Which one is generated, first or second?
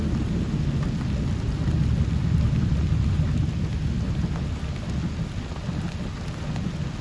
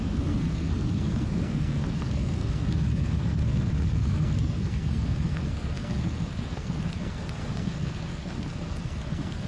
second